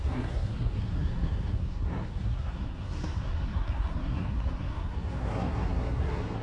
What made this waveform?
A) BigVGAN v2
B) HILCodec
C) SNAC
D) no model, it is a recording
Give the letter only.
C